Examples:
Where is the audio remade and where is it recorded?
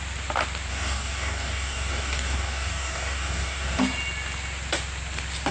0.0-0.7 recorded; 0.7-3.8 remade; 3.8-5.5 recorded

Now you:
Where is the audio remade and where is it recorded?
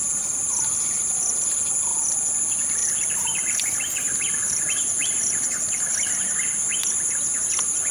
0.0-7.9 recorded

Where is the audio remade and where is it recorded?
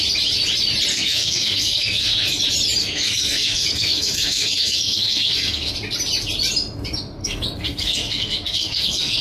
0.0-0.9 recorded; 0.9-2.4 remade; 2.4-2.8 recorded; 2.8-5.7 remade; 5.7-7.2 recorded; 7.2-9.2 remade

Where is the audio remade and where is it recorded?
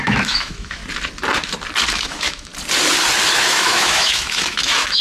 0.0-0.8 remade; 0.8-1.9 recorded; 1.9-2.5 remade; 2.5-3.3 recorded; 3.3-5.0 remade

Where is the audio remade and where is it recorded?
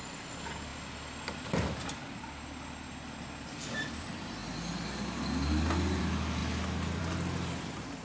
0.0-8.0 recorded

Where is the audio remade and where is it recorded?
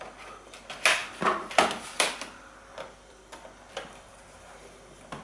0.0-1.0 recorded; 1.0-4.1 remade; 4.1-5.2 recorded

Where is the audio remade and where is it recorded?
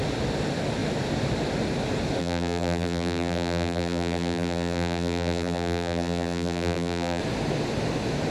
0.0-2.2 recorded; 2.2-7.2 remade; 7.2-8.3 recorded